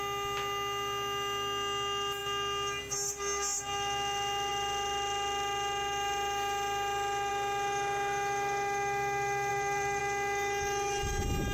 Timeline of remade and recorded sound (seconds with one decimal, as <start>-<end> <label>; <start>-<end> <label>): 0.0-9.5 recorded; 9.5-10.0 remade; 10.0-11.5 recorded